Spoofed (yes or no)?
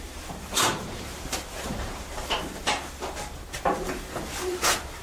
yes